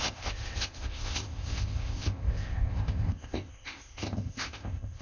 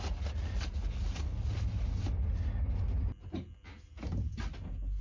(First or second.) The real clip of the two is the second